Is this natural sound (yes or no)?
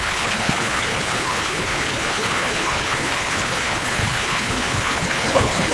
no